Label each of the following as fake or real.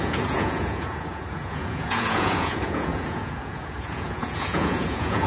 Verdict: fake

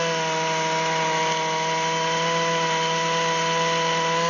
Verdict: real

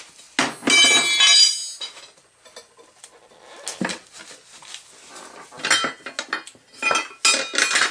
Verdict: real